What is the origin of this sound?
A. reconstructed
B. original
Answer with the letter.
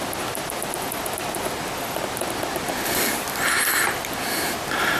B